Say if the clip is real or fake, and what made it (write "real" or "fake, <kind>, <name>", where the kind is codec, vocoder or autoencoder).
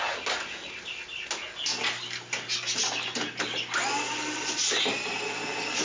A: real